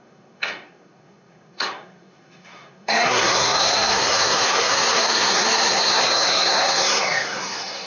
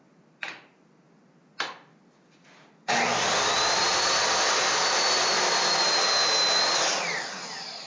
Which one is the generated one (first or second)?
first